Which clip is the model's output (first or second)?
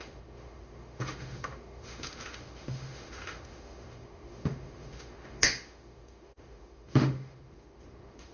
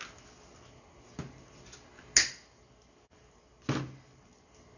first